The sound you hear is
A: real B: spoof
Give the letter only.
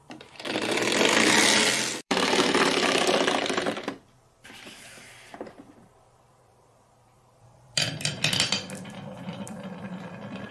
B